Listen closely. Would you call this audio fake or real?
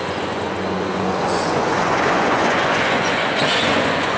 fake